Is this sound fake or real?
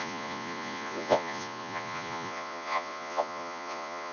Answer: fake